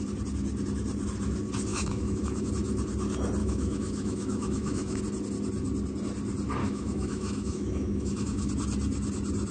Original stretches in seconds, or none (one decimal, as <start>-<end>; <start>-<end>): 0.0-1.7; 2.5-3.4; 5.0-6.6; 8.5-9.5